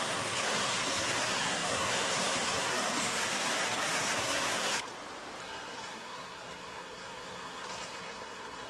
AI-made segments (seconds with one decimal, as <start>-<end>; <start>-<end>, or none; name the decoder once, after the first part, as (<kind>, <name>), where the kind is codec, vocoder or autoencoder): 0.0-4.9 (codec, SNAC); 5.4-8.7